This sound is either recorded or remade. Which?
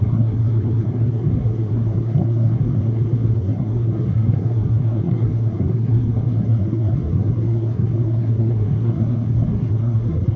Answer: remade